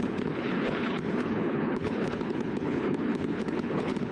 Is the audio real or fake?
fake